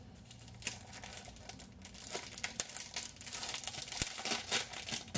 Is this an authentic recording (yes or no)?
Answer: yes